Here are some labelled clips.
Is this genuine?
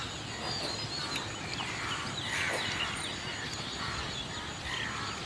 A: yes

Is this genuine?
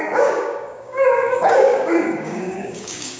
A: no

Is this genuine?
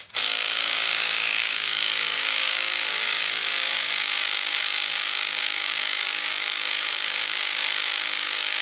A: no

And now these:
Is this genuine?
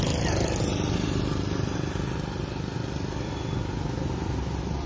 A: yes